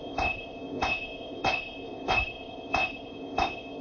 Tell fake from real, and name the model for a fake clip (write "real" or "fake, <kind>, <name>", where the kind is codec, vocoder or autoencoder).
fake, codec, ZipCodec